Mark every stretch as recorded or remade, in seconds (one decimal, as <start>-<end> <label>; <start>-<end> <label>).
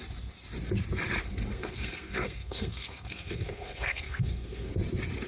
0.0-1.5 recorded; 1.5-4.7 remade; 4.7-5.3 recorded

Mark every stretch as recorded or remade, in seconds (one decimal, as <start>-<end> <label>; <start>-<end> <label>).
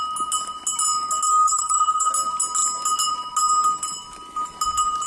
0.0-1.3 recorded; 1.3-2.1 remade; 2.1-5.1 recorded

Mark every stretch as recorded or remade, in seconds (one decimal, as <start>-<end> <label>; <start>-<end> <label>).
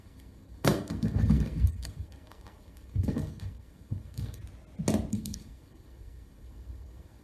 0.0-4.4 remade; 4.4-5.1 recorded; 5.1-7.2 remade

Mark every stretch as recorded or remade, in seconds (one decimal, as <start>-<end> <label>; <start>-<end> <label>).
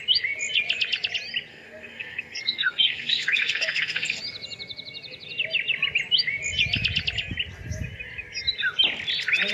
0.0-1.5 recorded; 1.5-4.2 remade; 4.2-9.5 recorded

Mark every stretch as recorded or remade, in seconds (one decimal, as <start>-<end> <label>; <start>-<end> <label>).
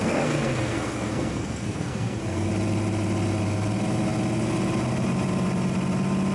0.0-2.5 remade; 2.5-6.3 recorded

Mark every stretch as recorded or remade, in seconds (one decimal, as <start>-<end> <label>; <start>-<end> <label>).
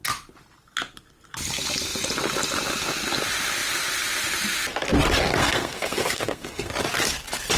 0.0-5.4 recorded; 5.4-6.7 remade; 6.7-7.6 recorded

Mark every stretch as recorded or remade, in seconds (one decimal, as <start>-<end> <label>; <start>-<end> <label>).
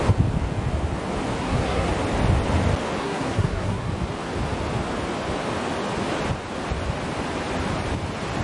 0.0-1.4 recorded; 1.4-1.9 remade; 1.9-3.0 recorded; 3.0-3.9 remade; 3.9-8.4 recorded